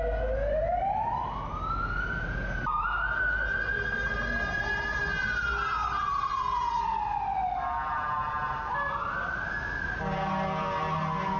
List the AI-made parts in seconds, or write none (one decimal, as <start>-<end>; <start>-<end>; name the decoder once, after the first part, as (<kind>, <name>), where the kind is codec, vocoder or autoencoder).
none

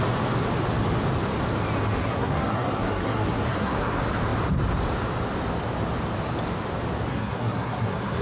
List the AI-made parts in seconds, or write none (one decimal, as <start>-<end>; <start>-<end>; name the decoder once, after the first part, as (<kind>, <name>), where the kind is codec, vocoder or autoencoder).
2.0-3.9 (codec, SNAC); 7.1-8.2

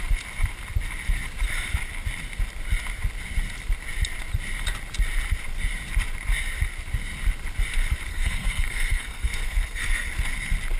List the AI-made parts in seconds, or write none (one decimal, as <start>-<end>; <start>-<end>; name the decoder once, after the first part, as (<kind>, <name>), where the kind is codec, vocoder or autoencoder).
8.1-10.1 (codec, SNAC)

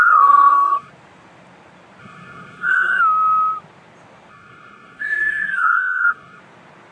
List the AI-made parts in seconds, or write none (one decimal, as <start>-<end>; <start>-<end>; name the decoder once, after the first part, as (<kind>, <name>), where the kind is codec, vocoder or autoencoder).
0.0-0.9 (codec, SNAC); 2.0-3.0; 4.3-6.4

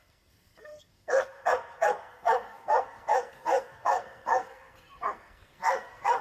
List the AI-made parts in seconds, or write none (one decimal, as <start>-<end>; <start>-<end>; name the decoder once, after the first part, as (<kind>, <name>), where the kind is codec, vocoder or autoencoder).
0.0-6.2 (codec, SNAC)

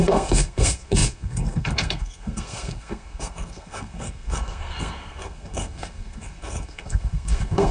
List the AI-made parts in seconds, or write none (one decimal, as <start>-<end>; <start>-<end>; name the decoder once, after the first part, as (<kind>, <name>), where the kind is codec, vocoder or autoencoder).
0.0-7.7 (codec, SNAC)